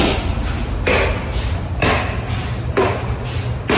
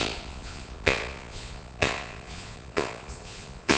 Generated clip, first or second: second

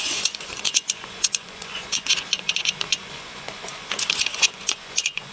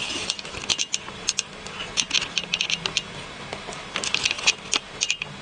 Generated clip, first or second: first